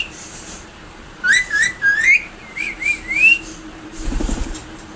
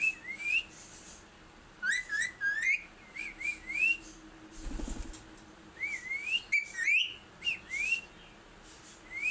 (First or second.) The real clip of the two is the second